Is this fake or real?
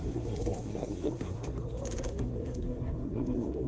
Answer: fake